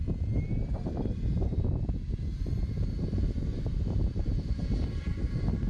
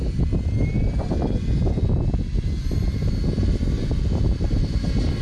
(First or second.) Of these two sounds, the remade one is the first